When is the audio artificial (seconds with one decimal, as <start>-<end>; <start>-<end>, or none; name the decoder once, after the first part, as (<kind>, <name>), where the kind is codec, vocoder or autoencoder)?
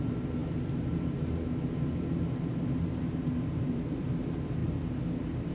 0.0-4.6 (vocoder, BigVGAN v2)